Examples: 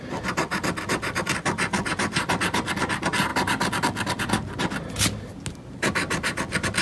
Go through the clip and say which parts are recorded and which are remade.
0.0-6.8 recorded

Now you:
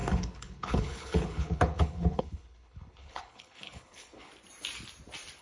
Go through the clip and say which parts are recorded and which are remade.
0.0-4.3 remade; 4.3-5.4 recorded

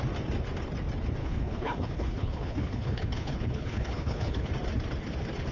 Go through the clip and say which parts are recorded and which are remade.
0.0-1.2 recorded; 1.2-4.5 remade; 4.5-5.5 recorded

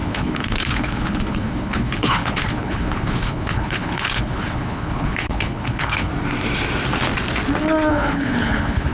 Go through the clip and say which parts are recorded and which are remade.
0.0-6.1 remade; 6.1-7.9 recorded; 7.9-8.9 remade

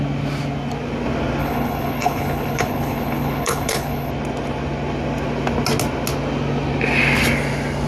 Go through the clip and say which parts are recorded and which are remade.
0.0-1.4 recorded; 1.4-4.1 remade; 4.1-7.9 recorded

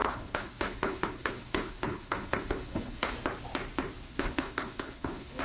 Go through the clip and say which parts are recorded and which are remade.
0.0-3.1 remade; 3.1-4.0 recorded; 4.0-5.4 remade

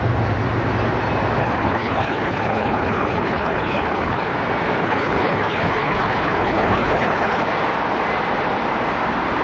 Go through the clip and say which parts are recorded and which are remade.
0.0-1.4 recorded; 1.4-4.3 remade; 4.3-4.8 recorded; 4.8-7.4 remade; 7.4-9.4 recorded